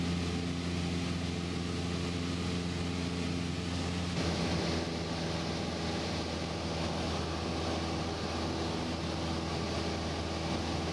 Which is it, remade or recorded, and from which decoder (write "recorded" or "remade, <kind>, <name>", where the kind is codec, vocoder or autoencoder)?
recorded